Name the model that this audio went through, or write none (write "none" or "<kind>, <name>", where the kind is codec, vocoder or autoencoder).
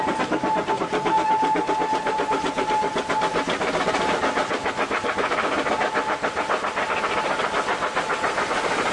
none